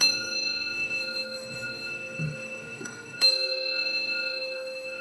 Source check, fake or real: fake